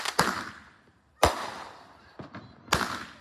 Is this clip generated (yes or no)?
no